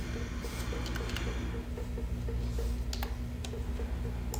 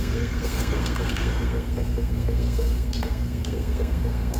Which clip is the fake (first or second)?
second